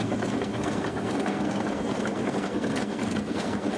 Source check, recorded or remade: remade